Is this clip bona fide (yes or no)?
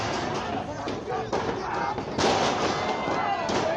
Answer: yes